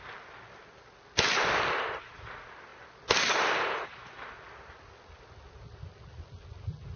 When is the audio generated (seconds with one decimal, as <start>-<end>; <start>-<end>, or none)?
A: 2.7-4.9